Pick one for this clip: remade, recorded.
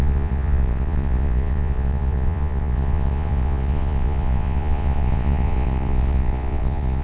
remade